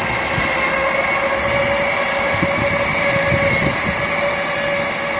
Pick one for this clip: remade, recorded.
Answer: recorded